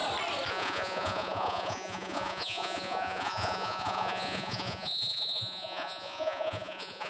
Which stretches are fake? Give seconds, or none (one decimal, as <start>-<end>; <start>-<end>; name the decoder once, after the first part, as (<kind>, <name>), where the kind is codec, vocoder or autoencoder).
0.5-7.1 (vocoder, Vocos)